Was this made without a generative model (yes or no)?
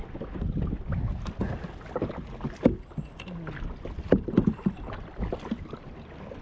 yes